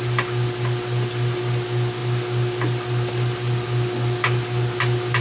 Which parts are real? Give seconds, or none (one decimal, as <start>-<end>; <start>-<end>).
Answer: 0.0-5.2